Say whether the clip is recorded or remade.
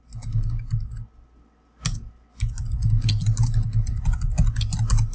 recorded